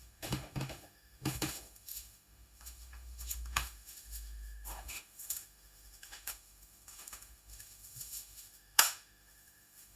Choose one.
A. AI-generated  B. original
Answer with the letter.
A